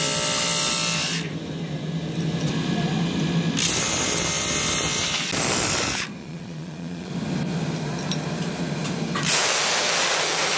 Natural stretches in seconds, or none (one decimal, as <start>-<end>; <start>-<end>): 0.0-6.2; 7.1-10.6